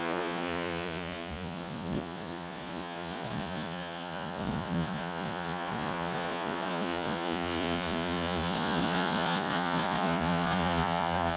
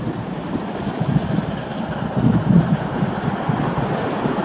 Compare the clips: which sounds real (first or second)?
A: second